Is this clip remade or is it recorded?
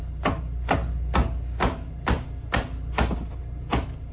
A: recorded